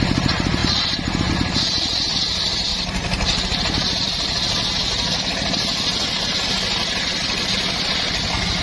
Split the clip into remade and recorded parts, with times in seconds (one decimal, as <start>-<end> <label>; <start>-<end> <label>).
0.0-0.6 recorded; 0.6-1.3 remade; 1.3-2.7 recorded; 2.7-3.4 remade; 3.4-8.6 recorded